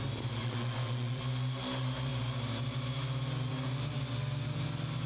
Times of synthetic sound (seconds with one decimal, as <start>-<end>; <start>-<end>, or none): 0.4-1.2